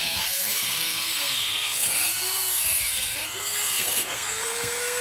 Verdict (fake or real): fake